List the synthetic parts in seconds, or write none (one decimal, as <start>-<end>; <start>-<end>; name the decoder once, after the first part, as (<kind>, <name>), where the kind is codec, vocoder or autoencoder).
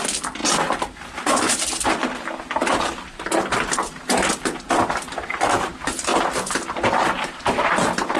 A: none